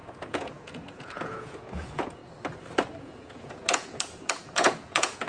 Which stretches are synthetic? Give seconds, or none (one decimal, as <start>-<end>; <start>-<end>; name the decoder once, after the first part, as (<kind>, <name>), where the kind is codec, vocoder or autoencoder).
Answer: 0.0-2.2 (vocoder, Vocos); 3.0-5.3